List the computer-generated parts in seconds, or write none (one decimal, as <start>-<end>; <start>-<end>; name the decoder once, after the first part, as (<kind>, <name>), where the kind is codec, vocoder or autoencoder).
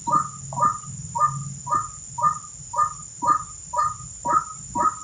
3.0-4.5 (vocoder, BigVGAN v2)